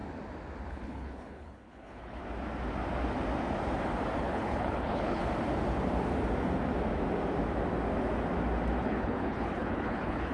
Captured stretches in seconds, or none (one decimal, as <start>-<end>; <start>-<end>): 0.0-0.7; 2.2-4.2; 5.2-8.8